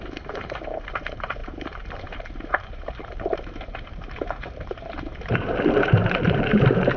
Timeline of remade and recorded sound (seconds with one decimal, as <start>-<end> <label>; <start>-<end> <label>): 0.0-7.0 remade